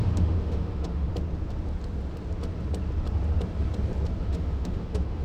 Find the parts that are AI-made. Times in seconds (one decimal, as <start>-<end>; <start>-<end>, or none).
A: 0.0-1.1; 4.2-5.2